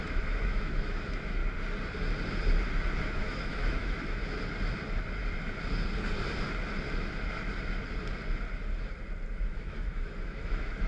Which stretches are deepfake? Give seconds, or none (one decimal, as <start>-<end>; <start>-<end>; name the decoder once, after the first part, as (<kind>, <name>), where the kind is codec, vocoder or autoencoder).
0.0-1.4 (autoencoder, DAC-VAE); 3.1-4.2; 9.3-10.9